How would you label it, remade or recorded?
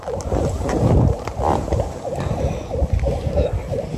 remade